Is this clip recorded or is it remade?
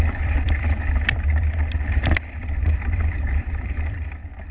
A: remade